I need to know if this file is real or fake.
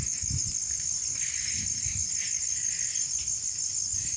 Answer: real